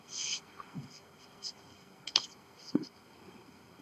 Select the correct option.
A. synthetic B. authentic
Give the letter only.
A